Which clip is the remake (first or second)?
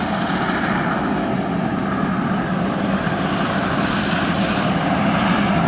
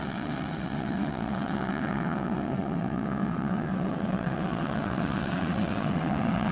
second